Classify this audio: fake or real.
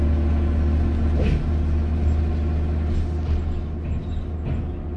real